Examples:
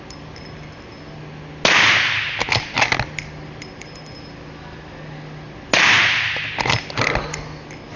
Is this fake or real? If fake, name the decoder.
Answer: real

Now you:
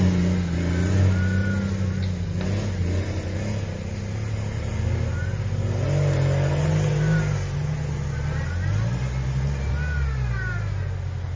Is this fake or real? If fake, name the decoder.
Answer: real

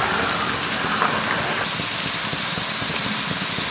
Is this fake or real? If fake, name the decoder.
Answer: real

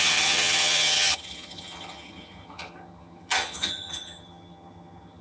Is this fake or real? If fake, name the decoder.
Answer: fake, vocoder, HiFi-GAN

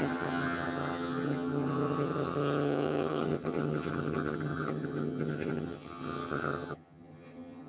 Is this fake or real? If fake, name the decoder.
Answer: fake, vocoder, HiFi-GAN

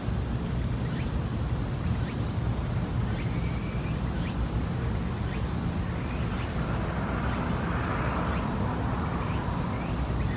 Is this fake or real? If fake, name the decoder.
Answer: real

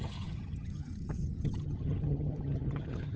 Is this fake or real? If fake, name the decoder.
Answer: fake, vocoder, HiFi-GAN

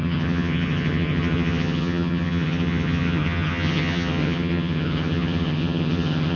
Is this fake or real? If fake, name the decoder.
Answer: fake, vocoder, HiFi-GAN